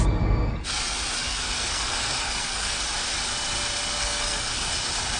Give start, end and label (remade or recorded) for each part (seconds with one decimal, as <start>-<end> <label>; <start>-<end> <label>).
0.0-1.3 recorded; 1.3-2.8 remade; 2.8-4.0 recorded; 4.0-4.7 remade; 4.7-5.2 recorded